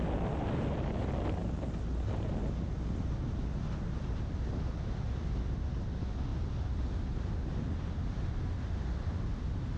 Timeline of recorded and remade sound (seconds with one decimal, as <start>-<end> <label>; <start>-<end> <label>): 0.0-9.8 recorded